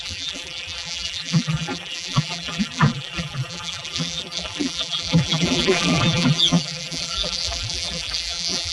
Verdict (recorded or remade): remade